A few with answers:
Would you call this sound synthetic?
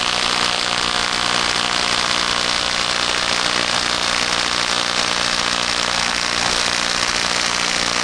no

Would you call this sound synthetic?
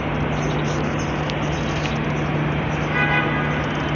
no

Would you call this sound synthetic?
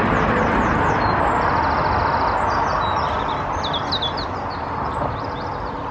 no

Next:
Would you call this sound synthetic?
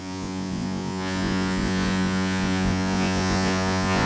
yes